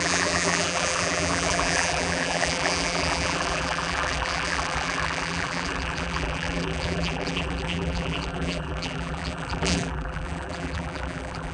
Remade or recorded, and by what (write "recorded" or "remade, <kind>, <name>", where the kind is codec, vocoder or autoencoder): remade, vocoder, BigVGAN v2